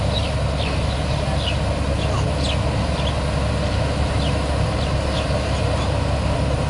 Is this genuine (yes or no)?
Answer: yes